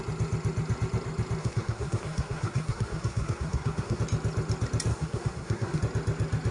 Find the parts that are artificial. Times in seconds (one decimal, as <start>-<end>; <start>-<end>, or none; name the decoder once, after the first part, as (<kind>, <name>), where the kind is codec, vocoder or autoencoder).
1.4-4.0 (codec, SNAC); 4.9-5.8

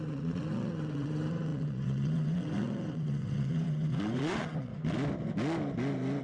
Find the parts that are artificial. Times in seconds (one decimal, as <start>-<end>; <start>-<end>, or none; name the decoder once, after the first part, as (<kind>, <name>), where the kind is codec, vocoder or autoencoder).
0.0-4.7 (vocoder, WaveNeXt)

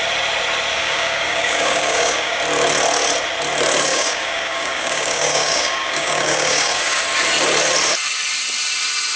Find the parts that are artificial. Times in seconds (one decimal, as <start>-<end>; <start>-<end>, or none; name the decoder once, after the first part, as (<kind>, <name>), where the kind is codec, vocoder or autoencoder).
0.7-2.4 (codec, DAC); 3.9-7.0

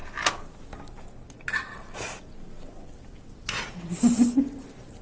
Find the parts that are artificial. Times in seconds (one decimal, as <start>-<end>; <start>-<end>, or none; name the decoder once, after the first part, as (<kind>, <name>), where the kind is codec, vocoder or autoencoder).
none

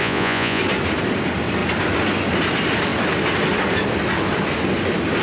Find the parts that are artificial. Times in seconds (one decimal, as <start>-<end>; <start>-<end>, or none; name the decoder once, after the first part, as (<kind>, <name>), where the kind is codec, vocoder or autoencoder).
0.0-0.6 (vocoder, Vocos)